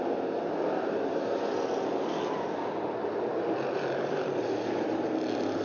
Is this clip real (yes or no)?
yes